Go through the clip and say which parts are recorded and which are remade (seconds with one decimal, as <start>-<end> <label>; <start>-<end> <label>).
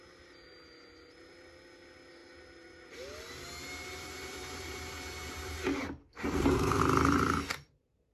0.0-6.0 recorded; 6.0-6.8 remade; 6.8-8.1 recorded